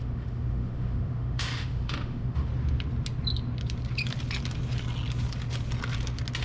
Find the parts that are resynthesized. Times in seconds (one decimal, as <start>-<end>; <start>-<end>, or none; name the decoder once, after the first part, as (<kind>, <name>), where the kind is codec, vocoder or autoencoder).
0.0-2.5 (autoencoder, DAC-VAE)